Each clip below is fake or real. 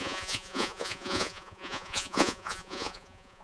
fake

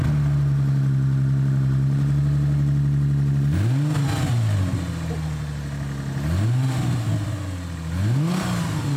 real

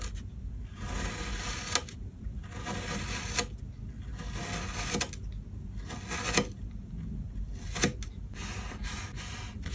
real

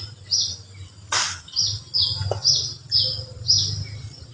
real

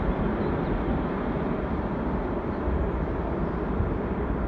real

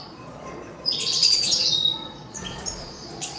fake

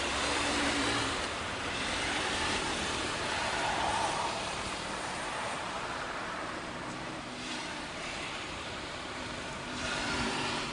fake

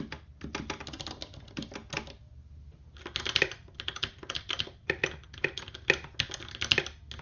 real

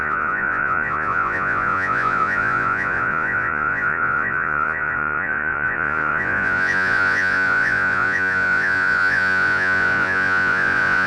fake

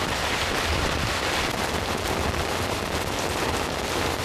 real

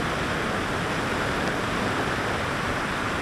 real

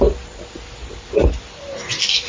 real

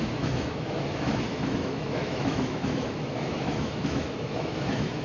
fake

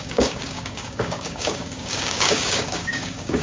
fake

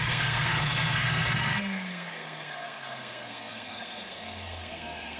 fake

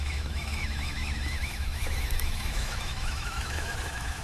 fake